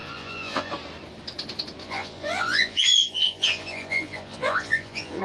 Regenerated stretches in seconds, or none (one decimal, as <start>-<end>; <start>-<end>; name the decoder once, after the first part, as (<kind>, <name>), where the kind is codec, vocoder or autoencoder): 0.0-0.7 (vocoder, Vocos); 1.8-5.2